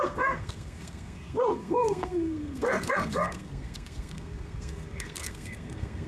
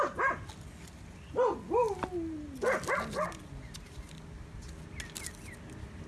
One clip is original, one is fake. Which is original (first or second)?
second